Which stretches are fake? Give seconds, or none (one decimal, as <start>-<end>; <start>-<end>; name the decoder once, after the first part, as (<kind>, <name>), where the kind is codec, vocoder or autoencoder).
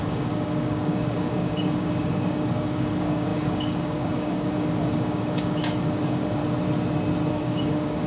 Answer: 0.0-6.4 (codec, DAC); 7.3-8.1